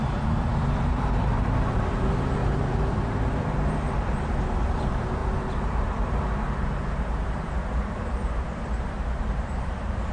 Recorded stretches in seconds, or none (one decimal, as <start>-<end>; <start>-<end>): none

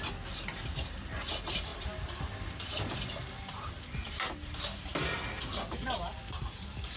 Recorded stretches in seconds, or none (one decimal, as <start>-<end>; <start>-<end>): 0.0-4.9; 6.4-7.0

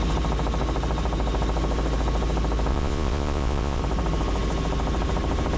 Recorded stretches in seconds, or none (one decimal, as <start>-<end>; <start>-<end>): 0.0-2.7; 3.8-5.6